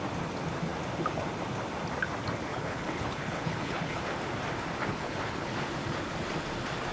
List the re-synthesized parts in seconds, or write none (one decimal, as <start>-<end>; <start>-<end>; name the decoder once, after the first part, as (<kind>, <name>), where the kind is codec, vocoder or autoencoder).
2.5-4.0 (codec, HILCodec); 4.9-5.5